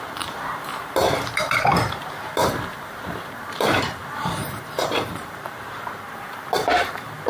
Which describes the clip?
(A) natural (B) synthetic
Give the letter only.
B